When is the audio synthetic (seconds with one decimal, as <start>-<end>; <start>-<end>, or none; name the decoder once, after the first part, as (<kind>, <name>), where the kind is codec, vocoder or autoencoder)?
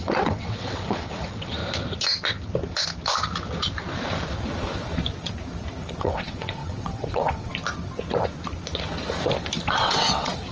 0.0-1.6 (vocoder, WaveNeXt); 6.0-7.5; 9.8-10.5